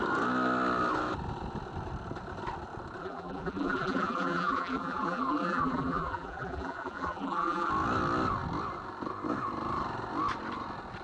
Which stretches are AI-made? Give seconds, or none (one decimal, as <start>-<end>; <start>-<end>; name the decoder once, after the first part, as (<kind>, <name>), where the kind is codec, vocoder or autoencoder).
3.0-7.7 (vocoder, BigVGAN v2)